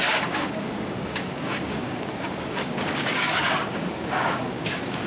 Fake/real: fake